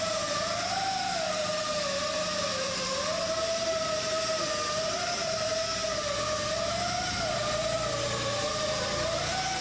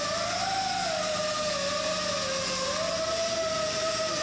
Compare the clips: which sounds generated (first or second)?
first